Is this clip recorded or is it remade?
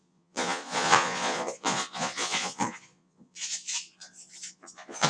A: remade